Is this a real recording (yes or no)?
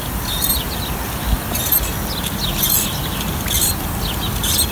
yes